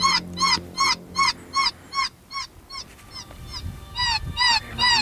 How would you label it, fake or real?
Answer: real